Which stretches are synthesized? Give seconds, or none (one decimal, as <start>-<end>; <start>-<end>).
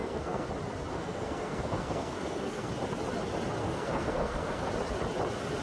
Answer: 0.0-0.5; 0.9-2.7; 3.6-4.7